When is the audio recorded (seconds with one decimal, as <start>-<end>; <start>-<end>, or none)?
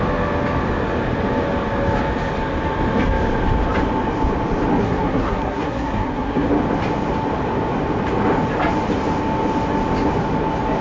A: 0.0-4.8; 6.5-10.8